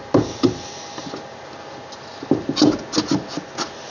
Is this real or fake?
real